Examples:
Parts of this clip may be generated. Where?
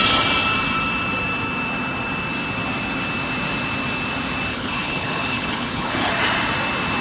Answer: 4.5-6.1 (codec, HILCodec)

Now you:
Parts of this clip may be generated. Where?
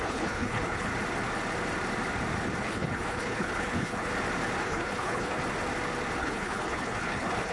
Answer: 0.0-0.9 (codec, HILCodec); 2.6-4.1; 4.6-5.4; 6.2-7.5